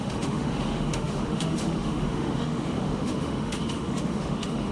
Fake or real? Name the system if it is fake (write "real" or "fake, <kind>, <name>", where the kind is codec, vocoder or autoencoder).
fake, autoencoder, DAC-VAE